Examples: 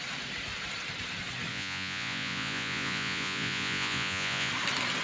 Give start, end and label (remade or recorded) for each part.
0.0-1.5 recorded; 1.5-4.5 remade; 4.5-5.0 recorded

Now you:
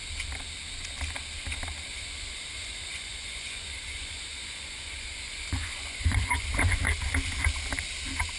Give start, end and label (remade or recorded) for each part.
0.0-1.9 recorded; 1.9-6.8 remade; 6.8-8.4 recorded

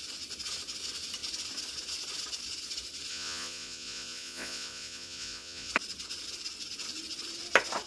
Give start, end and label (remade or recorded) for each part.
0.0-3.1 recorded; 3.1-5.7 remade; 5.7-7.9 recorded

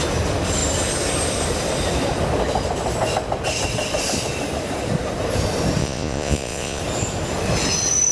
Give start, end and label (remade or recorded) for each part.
0.0-5.8 recorded; 5.8-6.8 remade; 6.8-8.1 recorded

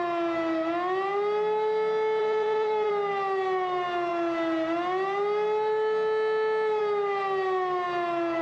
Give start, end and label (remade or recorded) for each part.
0.0-2.2 recorded; 2.2-2.9 remade; 2.9-8.4 recorded

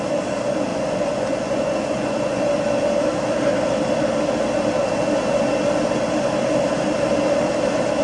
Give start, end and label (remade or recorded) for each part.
0.0-0.7 recorded; 0.7-2.4 remade; 2.4-8.0 recorded

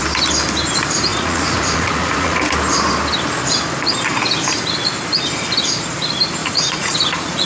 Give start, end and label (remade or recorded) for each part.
0.0-1.1 recorded; 1.1-2.4 remade; 2.4-6.4 recorded; 6.4-7.5 remade

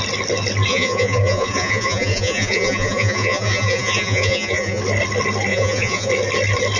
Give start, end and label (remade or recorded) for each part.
0.0-0.7 recorded; 0.7-4.8 remade; 4.8-5.5 recorded; 5.5-6.1 remade; 6.1-6.8 recorded